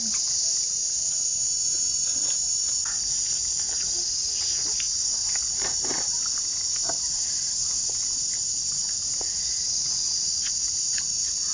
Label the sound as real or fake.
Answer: real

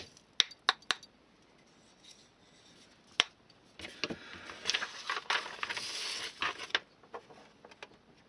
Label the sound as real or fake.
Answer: real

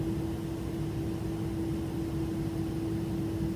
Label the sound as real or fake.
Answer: real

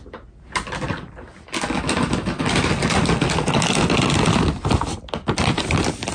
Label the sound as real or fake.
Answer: real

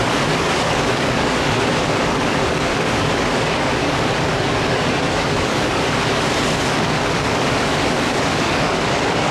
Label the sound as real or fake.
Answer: fake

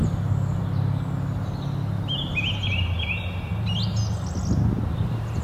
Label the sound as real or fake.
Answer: real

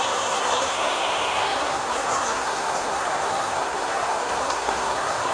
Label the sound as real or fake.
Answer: fake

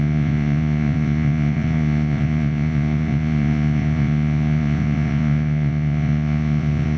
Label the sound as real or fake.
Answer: fake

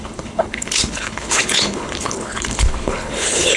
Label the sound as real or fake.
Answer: fake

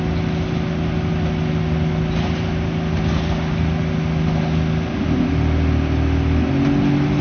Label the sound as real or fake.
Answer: real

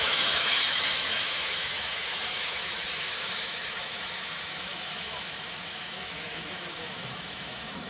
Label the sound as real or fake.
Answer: fake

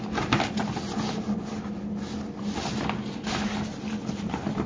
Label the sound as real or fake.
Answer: real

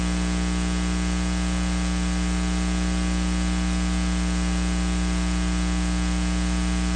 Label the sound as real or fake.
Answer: real